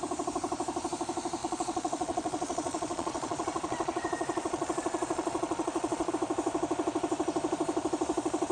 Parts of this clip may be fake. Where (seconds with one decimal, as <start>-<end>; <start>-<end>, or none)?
1.4-6.1